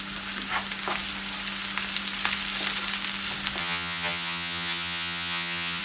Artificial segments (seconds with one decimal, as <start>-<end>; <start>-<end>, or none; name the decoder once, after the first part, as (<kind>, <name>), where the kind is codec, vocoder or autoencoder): 3.6-5.8 (vocoder, HiFi-GAN)